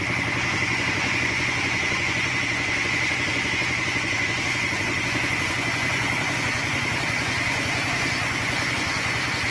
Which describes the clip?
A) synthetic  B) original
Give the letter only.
A